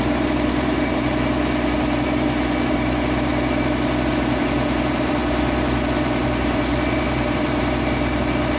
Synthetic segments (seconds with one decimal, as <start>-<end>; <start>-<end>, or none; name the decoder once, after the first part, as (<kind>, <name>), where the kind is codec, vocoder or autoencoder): 0.0-3.3 (vocoder, BigVGAN v2); 4.1-8.6